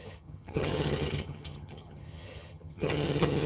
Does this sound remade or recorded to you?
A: remade